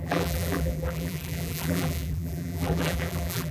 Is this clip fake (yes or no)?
yes